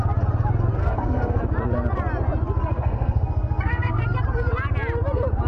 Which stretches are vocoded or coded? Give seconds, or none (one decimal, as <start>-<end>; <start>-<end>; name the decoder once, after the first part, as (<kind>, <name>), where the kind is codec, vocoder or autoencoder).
0.8-1.4 (codec, SNAC); 2.7-4.0